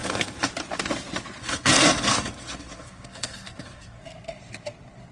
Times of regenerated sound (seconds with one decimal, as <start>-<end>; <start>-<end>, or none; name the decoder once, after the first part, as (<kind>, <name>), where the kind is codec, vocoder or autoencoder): 0.0-0.5 (codec, SNAC); 1.4-4.0